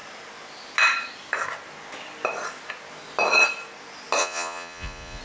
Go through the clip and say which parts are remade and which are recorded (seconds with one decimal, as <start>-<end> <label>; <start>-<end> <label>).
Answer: 0.0-4.2 recorded; 4.2-5.2 remade